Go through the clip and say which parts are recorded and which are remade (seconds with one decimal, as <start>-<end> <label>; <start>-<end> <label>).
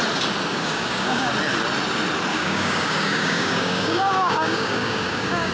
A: 0.0-0.5 recorded; 0.5-1.3 remade; 1.3-2.3 recorded; 2.3-5.5 remade